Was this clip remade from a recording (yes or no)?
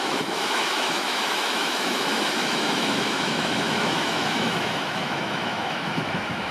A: yes